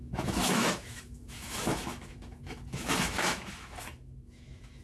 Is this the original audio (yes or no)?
no